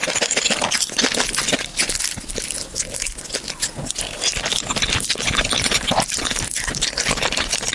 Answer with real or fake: real